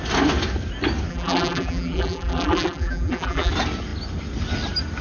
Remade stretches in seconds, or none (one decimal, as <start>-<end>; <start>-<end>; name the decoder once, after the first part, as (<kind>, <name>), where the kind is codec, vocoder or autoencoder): 1.1-3.5 (vocoder, BigVGAN v2)